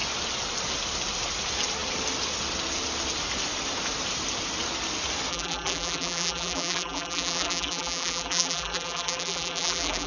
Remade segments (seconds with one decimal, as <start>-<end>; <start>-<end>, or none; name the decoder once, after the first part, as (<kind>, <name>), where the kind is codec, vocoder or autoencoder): 5.3-10.1 (vocoder, BigVGAN v2)